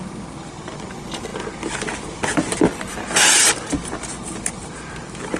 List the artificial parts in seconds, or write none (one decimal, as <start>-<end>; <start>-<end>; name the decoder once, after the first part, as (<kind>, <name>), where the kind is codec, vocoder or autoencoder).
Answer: none